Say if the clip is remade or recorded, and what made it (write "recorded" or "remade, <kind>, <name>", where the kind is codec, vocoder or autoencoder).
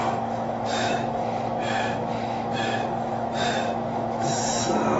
remade, autoencoder, DAC-VAE